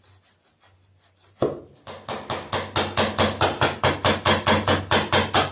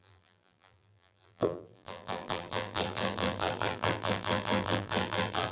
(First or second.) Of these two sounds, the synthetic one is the second